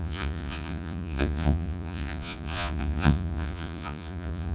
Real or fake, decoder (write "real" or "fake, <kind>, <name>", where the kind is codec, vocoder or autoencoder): fake, vocoder, Vocos